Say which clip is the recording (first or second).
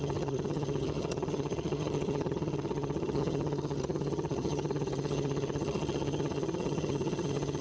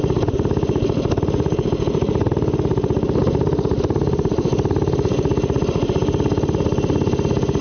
second